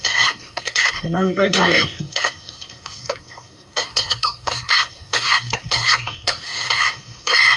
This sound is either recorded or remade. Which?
remade